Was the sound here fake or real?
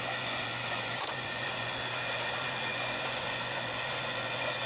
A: fake